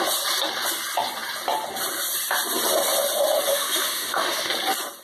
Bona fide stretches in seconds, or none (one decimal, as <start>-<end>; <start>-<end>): 0.0-3.5; 4.5-5.0

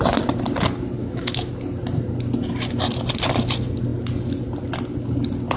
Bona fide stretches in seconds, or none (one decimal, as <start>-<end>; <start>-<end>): 0.0-1.0; 1.5-5.6